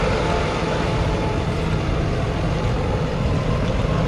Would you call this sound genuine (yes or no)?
yes